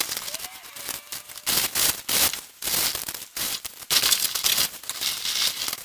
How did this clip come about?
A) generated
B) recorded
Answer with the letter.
B